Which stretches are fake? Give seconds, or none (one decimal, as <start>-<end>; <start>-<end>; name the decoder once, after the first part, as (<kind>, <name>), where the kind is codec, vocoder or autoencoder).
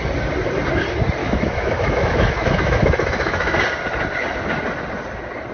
1.2-3.6 (autoencoder, DAC-VAE)